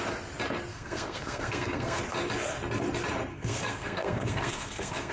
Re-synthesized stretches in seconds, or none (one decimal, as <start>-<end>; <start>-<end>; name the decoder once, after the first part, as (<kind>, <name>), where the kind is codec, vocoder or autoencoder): 0.7-2.0 (codec, SNAC); 3.3-5.1